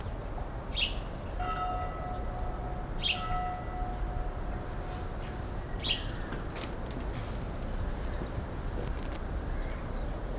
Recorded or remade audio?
recorded